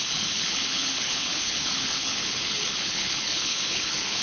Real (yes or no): no